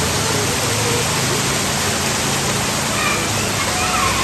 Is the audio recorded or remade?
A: recorded